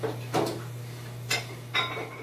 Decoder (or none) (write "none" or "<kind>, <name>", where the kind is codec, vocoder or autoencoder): none